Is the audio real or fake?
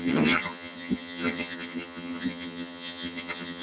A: fake